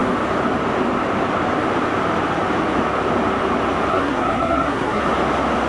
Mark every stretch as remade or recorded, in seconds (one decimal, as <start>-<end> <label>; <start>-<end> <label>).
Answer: 0.0-3.9 recorded; 3.9-5.0 remade; 5.0-5.7 recorded